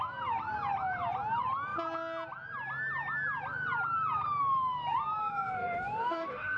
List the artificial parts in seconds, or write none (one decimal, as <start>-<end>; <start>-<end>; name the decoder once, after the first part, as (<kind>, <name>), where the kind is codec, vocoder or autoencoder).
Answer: 5.2-6.6 (autoencoder, DAC-VAE)